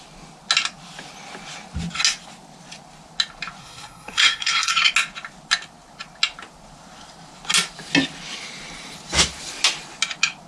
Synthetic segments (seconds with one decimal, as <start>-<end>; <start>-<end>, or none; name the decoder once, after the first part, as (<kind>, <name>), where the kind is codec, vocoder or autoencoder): 3.6-4.7 (codec, SNAC)

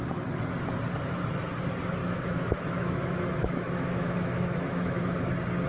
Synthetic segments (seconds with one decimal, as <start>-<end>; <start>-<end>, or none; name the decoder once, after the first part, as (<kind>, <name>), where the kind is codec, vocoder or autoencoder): 2.0-5.3 (autoencoder, DAC-VAE)

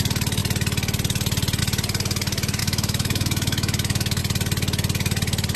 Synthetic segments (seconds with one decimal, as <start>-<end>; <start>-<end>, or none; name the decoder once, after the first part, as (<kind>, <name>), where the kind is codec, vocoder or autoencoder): 2.6-4.2 (autoencoder, DAC-VAE)

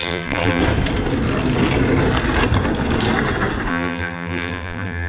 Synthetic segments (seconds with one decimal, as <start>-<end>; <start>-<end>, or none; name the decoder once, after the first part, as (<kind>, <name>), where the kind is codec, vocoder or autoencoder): 0.0-0.6 (vocoder, BigVGAN v2); 3.7-5.1

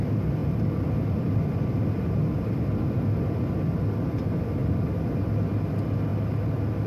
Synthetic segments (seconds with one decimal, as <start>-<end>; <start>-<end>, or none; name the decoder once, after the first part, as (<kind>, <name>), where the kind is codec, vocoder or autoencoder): 0.4-2.6 (vocoder, BigVGAN v2); 4.6-5.2; 6.1-6.9

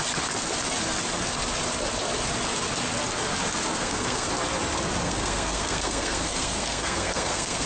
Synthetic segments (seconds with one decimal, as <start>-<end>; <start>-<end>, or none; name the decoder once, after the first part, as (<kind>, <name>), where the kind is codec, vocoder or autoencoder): 3.7-4.3 (codec, SNAC); 5.0-7.7

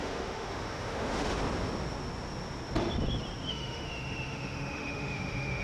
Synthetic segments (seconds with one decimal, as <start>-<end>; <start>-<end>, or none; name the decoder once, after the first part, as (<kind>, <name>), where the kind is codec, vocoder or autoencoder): 0.0-1.4 (autoencoder, DAC-VAE); 3.5-5.6

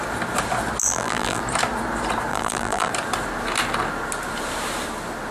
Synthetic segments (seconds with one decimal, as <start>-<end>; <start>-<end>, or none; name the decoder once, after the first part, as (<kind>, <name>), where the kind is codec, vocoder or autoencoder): 0.8-1.4 (vocoder, BigVGAN v2); 2.3-2.9